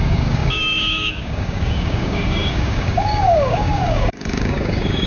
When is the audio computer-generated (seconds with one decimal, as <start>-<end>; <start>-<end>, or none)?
0.0-5.1

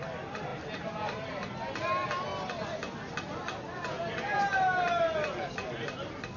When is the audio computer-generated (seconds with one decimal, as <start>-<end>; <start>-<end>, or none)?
none

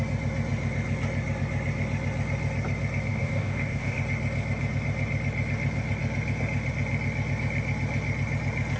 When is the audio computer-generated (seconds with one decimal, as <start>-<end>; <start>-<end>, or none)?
3.1-4.0

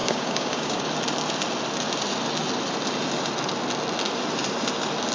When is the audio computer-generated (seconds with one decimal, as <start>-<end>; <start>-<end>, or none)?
0.0-0.8

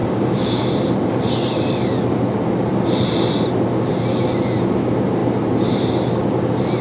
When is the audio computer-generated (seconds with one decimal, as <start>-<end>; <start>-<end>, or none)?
0.0-0.7

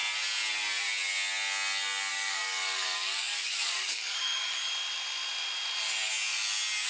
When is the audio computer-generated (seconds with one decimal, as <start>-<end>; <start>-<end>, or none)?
2.1-4.7

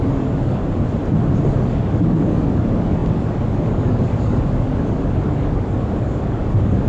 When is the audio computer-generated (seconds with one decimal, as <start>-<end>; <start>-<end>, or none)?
0.0-0.6; 1.7-6.9